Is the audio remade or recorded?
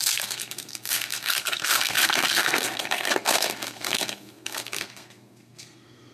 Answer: remade